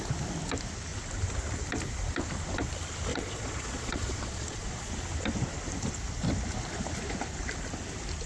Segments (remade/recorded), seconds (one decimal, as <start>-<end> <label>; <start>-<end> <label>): 0.0-3.1 recorded; 3.1-4.9 remade; 4.9-8.3 recorded